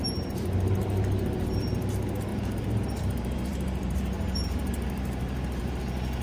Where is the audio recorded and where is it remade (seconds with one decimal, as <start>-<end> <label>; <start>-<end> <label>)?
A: 0.0-2.3 recorded; 2.3-5.8 remade; 5.8-6.2 recorded